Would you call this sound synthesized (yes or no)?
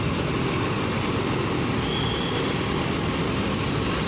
no